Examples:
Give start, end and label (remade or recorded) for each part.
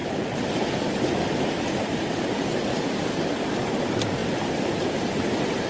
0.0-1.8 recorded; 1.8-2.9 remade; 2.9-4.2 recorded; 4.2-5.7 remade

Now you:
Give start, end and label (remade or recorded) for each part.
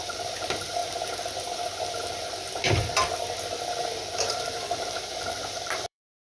0.0-0.8 remade; 0.8-4.3 recorded; 4.3-6.2 remade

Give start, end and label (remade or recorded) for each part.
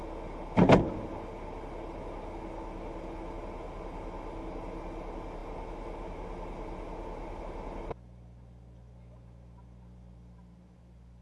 0.0-11.2 recorded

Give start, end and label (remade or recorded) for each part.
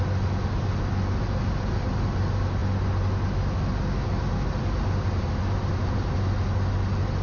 0.0-7.2 recorded